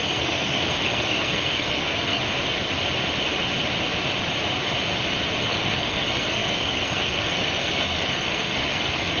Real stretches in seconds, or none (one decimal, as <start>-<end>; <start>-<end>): 2.2-5.4